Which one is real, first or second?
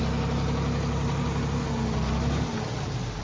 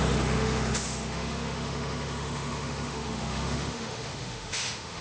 first